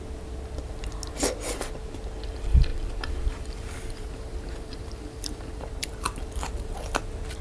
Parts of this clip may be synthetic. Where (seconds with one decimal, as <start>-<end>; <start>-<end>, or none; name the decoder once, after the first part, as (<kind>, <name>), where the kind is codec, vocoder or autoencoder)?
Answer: 2.7-7.0 (vocoder, BigVGAN v2)